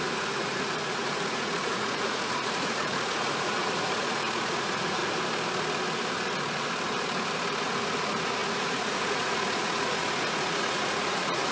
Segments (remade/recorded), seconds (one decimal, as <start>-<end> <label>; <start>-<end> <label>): 0.0-5.0 remade; 5.0-7.8 recorded; 7.8-11.5 remade